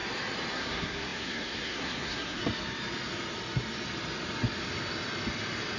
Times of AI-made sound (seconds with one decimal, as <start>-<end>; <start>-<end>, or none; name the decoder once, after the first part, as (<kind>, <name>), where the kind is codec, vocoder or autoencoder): 0.5-2.4 (codec, SNAC)